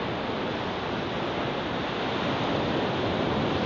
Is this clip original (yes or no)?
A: yes